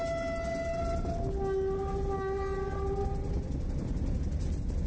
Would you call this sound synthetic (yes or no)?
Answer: no